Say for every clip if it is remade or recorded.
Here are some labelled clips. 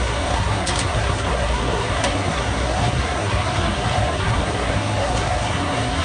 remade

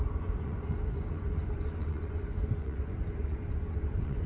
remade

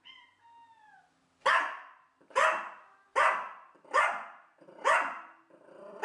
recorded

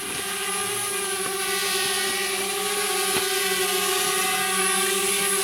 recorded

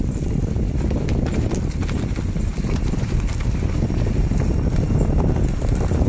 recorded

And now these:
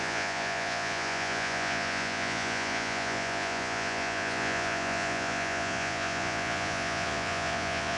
remade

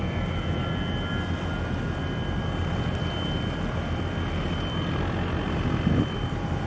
recorded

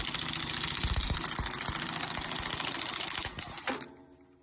recorded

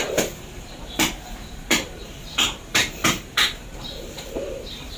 remade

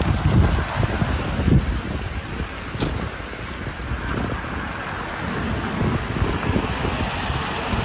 recorded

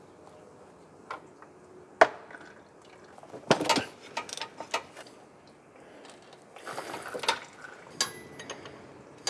recorded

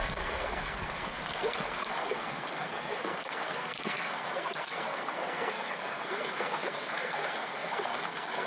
remade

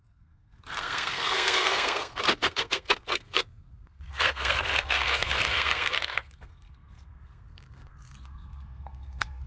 remade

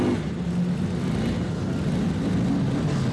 recorded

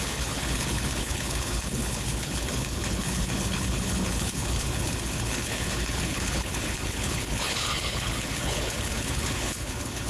remade